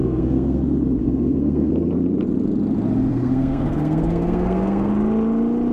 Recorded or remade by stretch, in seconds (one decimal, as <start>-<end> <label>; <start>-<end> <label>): 0.0-0.6 remade; 0.6-1.0 recorded; 1.0-1.7 remade; 1.7-3.1 recorded; 3.1-4.9 remade; 4.9-5.7 recorded